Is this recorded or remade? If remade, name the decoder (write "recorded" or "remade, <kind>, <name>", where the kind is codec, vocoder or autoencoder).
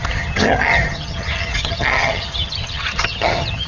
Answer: remade, vocoder, HiFi-GAN